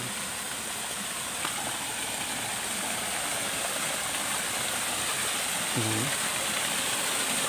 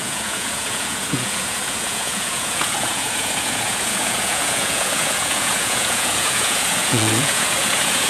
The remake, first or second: second